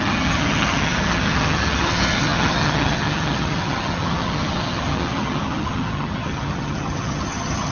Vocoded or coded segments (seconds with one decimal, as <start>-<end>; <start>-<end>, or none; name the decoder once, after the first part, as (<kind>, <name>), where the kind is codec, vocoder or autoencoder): 0.0-7.7 (vocoder, HiFi-GAN)

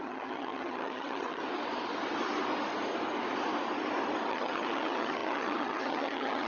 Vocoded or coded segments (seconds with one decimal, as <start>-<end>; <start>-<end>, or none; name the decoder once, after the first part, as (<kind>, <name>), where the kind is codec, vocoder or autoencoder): 0.0-1.4 (vocoder, HiFi-GAN); 4.3-6.5